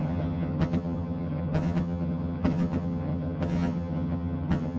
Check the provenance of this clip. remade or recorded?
remade